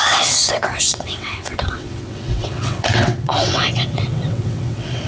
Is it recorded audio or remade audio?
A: remade